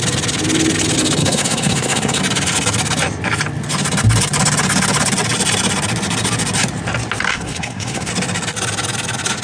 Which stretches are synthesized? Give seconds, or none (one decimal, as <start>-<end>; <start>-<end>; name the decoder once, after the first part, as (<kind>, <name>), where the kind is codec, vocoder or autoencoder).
1.2-2.2 (codec, SNAC); 7.3-8.1

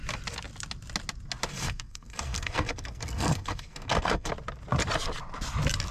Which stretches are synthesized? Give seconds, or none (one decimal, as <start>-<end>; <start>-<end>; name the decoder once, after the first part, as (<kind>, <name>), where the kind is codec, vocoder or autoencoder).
1.5-4.3 (codec, SNAC)

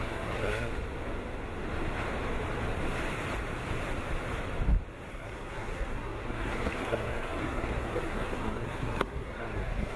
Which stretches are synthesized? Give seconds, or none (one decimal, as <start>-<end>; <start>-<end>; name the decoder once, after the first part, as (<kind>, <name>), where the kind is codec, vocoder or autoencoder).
0.0-0.7 (codec, SNAC); 5.1-10.0